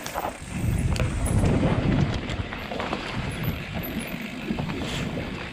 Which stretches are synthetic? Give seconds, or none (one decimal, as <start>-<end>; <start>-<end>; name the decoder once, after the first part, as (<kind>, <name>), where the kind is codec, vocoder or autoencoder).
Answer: 0.0-5.5 (vocoder, BigVGAN v2)